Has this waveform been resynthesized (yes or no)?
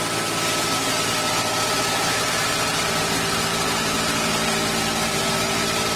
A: no